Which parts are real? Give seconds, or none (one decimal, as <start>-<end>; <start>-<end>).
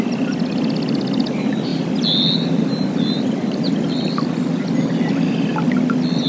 0.0-6.3